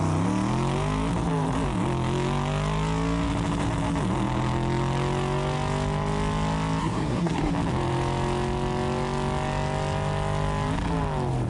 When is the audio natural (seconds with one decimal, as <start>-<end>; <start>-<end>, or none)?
0.0-6.8; 7.5-11.5